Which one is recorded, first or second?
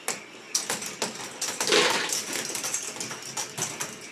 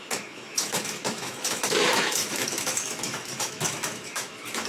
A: first